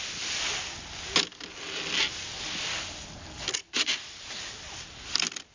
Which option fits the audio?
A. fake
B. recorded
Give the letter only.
B